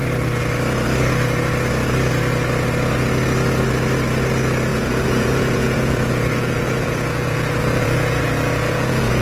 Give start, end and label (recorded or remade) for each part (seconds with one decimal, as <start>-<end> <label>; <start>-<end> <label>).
0.0-4.7 recorded; 4.7-9.2 remade